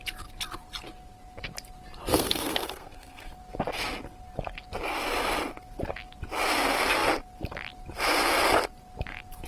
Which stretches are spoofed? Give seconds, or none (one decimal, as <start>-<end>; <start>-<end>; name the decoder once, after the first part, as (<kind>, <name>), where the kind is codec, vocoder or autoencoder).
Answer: 2.1-3.3 (codec, SNAC)

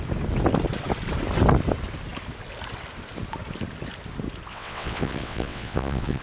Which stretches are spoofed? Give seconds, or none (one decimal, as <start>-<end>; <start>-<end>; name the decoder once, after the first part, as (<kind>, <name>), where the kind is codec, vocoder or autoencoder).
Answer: 4.5-6.2 (vocoder, WaveNeXt)